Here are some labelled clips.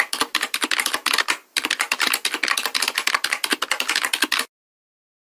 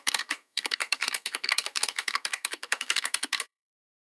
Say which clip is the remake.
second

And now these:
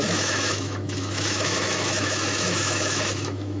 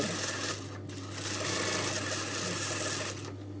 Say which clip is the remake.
first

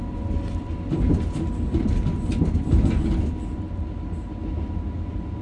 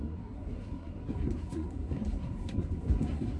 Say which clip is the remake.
second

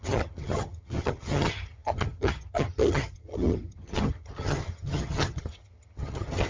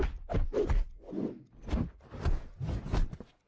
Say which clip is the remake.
first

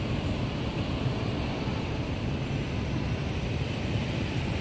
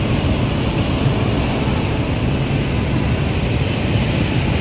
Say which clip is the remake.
first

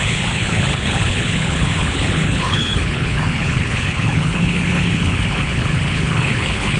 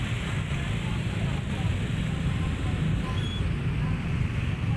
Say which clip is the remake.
first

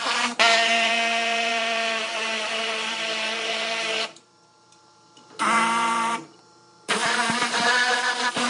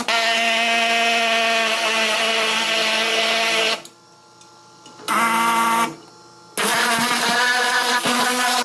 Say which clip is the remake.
first